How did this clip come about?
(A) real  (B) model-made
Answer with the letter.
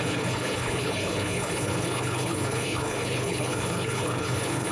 B